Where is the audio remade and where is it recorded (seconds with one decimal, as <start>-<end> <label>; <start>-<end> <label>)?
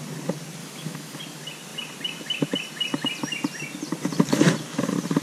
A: 0.0-0.6 recorded; 0.6-1.2 remade; 1.2-5.2 recorded